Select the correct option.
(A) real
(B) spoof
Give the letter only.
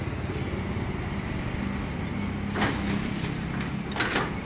A